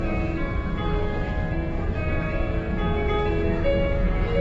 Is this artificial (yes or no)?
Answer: no